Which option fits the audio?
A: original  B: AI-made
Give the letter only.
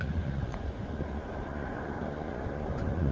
B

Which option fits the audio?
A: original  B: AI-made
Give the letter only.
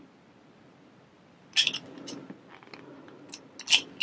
A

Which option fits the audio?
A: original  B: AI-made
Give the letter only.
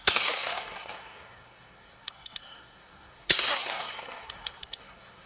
B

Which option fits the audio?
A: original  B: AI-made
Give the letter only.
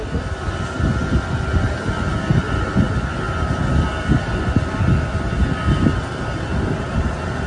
A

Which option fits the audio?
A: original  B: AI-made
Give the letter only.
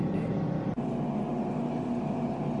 A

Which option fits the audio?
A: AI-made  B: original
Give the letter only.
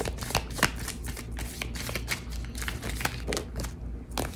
B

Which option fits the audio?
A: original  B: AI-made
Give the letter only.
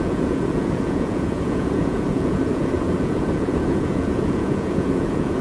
B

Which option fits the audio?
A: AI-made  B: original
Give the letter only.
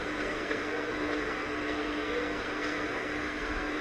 A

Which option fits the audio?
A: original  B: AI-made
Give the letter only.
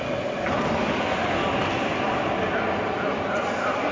A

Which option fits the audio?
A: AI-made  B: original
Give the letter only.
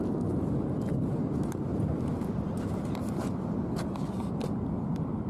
B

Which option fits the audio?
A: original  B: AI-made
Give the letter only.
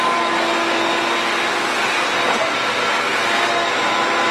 A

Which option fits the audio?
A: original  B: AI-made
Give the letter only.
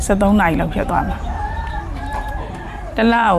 B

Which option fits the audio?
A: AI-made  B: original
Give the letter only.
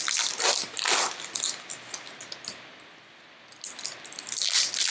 B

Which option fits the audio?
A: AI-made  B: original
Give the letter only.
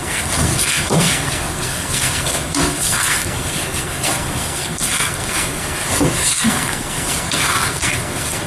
A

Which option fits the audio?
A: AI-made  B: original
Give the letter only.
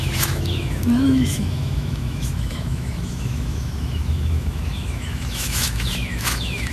A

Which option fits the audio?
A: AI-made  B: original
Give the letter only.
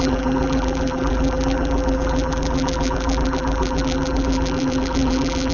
A